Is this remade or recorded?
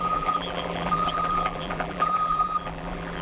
remade